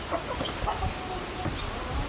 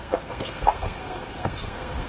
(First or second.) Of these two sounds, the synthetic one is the second